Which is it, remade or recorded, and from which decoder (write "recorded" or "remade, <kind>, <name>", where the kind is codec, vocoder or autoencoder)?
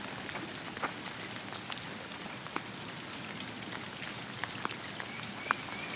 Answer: recorded